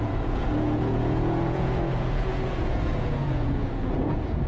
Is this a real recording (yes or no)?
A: no